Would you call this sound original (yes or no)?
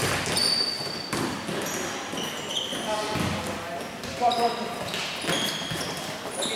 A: yes